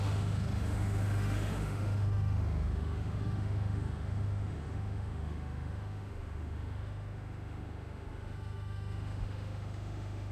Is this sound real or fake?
fake